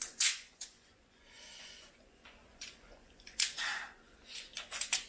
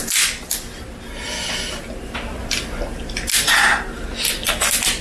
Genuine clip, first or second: second